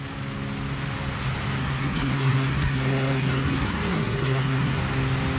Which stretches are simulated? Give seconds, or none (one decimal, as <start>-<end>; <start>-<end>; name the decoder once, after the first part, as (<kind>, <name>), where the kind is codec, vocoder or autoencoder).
1.6-4.8 (codec, SNAC)